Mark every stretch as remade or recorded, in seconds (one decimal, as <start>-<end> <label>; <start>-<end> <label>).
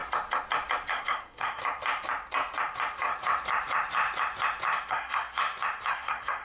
0.0-0.9 recorded; 0.9-1.6 remade; 1.6-4.9 recorded; 4.9-5.4 remade; 5.4-5.9 recorded; 5.9-6.4 remade